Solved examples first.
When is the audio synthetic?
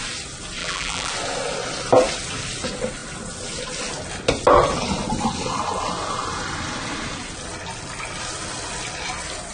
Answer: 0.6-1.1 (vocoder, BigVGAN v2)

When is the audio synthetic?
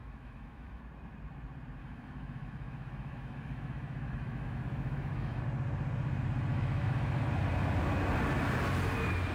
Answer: 0.0-0.8 (autoencoder, DAC-VAE); 1.8-5.4; 6.5-7.2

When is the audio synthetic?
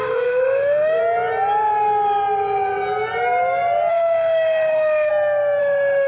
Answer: 0.0-1.0 (autoencoder, DAC-VAE); 3.9-5.1; 5.6-6.1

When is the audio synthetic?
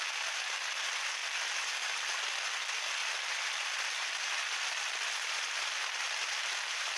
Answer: 3.0-7.0 (vocoder, BigVGAN v2)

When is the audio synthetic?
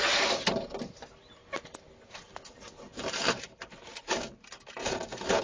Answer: 4.8-5.4 (vocoder, Vocos)